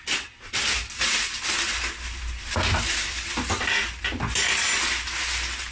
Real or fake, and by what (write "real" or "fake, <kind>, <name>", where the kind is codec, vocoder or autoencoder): real